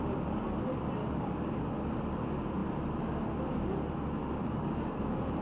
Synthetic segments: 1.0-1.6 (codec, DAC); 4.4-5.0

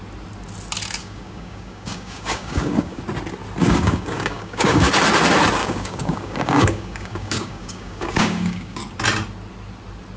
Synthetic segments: 1.0-3.0 (codec, DAC); 3.6-4.9; 5.6-8.8

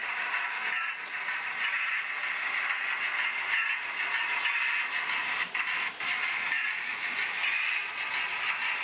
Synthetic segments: 0.0-0.6 (codec, DAC)

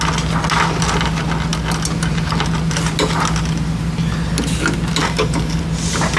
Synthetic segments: 5.0-5.6 (codec, DAC)

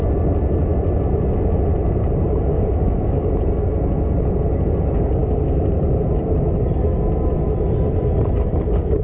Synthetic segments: 2.5-3.3 (codec, DAC)

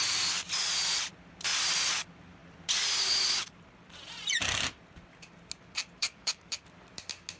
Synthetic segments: 6.0-6.5 (codec, DAC)

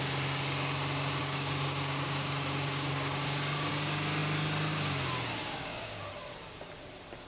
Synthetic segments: 1.2-3.7 (codec, DAC); 5.4-6.1

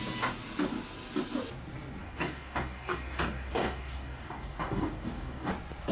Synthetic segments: 2.0-5.5 (codec, DAC)